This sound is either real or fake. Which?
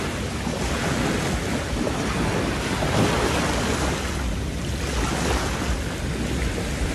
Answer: real